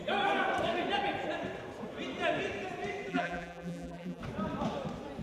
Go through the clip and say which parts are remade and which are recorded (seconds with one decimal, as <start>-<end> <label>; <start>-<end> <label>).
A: 0.0-3.1 recorded; 3.1-4.2 remade; 4.2-5.2 recorded